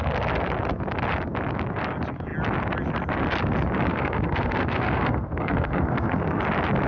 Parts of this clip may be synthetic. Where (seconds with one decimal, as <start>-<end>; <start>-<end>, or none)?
3.9-6.4